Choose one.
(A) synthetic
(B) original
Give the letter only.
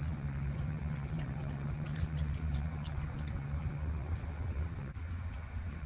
A